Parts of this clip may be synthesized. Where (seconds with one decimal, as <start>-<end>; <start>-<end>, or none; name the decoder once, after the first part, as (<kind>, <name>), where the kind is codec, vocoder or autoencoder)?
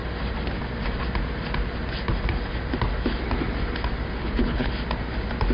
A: 4.2-4.7 (codec, HILCodec)